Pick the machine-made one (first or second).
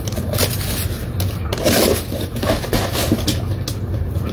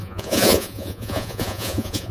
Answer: second